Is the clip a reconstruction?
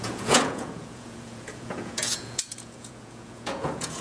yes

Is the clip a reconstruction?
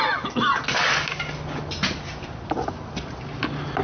no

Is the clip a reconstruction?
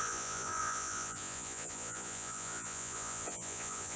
yes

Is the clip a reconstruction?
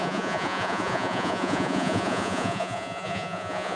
yes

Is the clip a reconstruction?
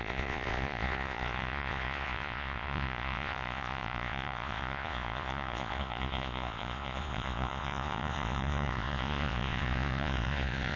yes